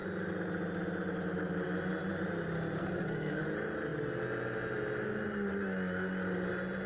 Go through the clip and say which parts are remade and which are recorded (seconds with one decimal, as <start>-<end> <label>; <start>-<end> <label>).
0.0-2.8 recorded; 2.8-3.4 remade; 3.4-6.9 recorded